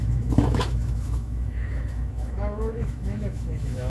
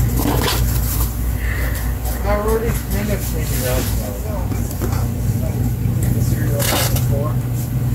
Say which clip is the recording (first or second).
second